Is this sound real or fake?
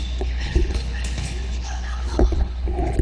fake